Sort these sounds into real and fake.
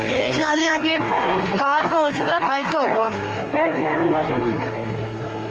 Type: fake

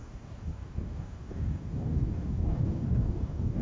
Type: fake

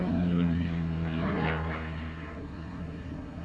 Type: fake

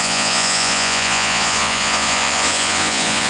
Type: fake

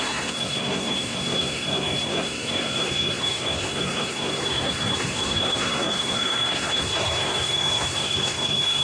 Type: fake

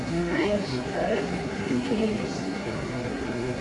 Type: fake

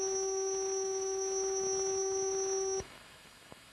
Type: fake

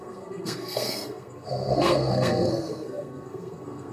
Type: fake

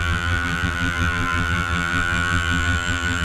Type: fake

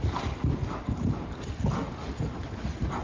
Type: real